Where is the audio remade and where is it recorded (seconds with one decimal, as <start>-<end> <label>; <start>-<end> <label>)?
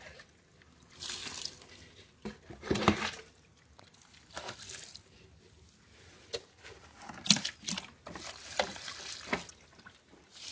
0.0-10.5 recorded